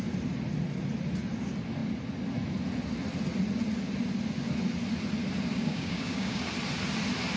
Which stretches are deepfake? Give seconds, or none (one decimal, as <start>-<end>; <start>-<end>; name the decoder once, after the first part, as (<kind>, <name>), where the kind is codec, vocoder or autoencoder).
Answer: 5.5-6.5 (codec, DAC)